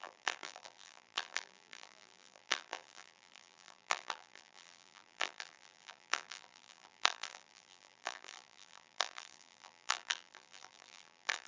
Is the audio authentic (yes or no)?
no